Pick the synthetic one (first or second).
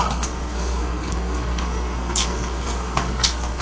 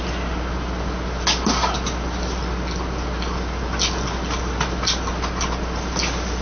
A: first